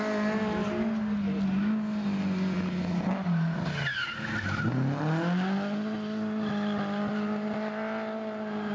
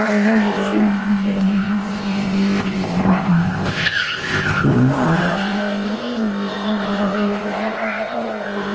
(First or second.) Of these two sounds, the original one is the first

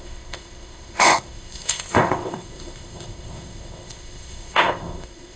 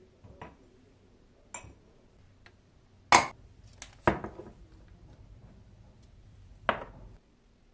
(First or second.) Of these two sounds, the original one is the second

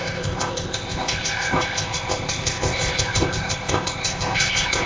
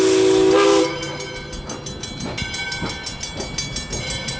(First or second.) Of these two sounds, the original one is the second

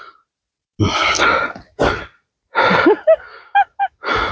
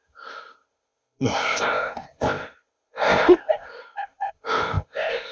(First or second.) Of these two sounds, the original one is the first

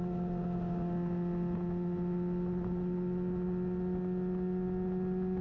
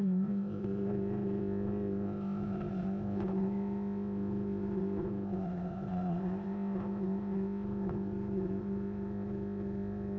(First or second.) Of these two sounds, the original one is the first